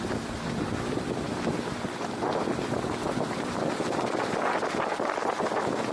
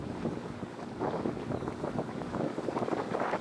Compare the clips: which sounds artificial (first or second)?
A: second